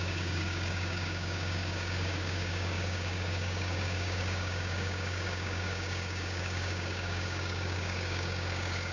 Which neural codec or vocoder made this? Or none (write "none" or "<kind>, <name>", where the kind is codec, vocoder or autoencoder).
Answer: codec, DAC